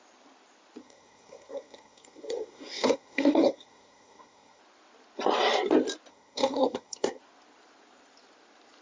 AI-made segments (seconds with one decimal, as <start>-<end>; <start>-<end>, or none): 0.8-4.6; 6.1-7.2